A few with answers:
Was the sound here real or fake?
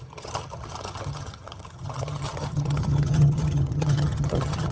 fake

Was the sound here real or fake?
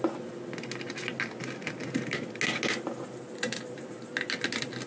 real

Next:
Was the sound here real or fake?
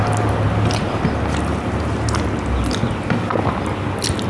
real